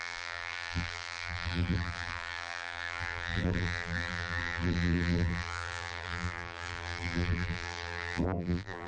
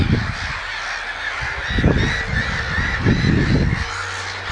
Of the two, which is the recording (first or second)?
second